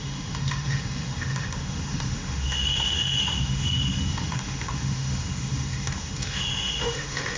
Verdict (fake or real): fake